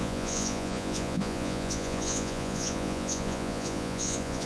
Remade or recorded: remade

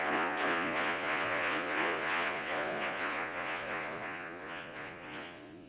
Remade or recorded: remade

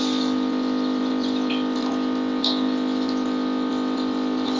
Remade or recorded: recorded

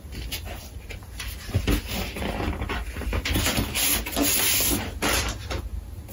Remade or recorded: recorded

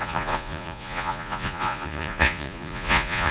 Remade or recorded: remade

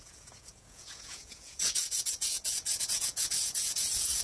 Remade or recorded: remade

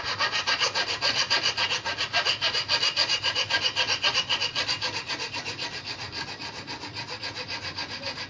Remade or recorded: recorded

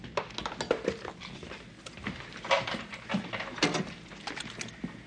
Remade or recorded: recorded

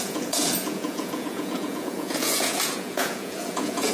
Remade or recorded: remade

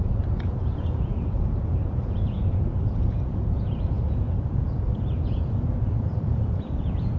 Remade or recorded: remade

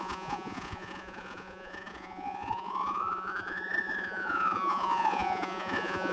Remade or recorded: remade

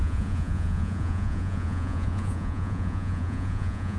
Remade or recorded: remade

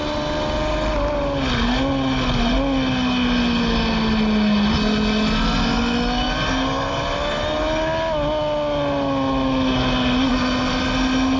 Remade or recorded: recorded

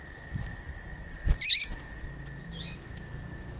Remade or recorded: recorded